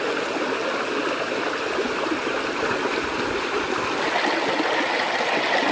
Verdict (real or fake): real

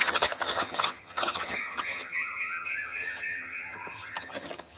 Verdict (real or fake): fake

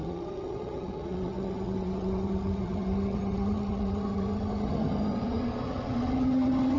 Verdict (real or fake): fake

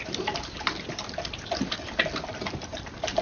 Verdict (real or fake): real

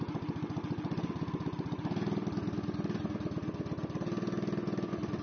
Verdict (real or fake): real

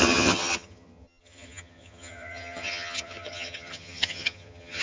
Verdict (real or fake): fake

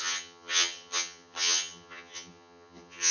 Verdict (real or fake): fake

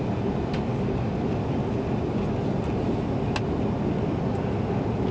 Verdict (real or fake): real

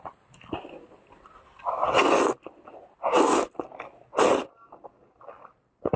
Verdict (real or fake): real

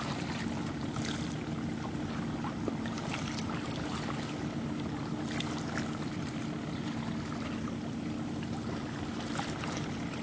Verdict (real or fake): real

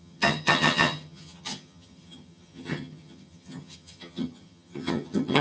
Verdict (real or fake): fake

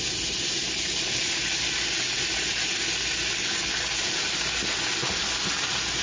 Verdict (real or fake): real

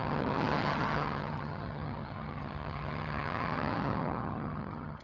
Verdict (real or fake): fake